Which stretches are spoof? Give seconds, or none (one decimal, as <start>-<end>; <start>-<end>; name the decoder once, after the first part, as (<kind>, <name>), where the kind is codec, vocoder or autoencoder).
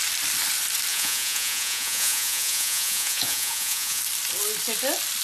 0.9-4.0 (vocoder, Vocos)